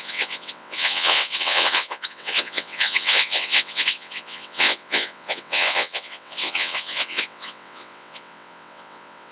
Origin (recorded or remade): remade